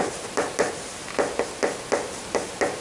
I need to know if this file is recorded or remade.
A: recorded